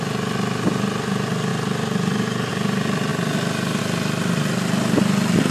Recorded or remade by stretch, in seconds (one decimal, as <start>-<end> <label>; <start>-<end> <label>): 0.0-5.5 recorded